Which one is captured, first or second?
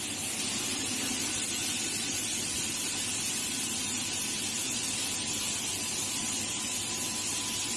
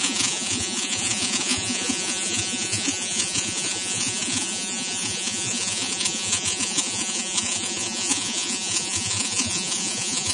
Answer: first